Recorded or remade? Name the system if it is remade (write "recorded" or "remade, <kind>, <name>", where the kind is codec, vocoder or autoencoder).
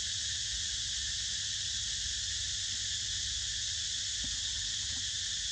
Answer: recorded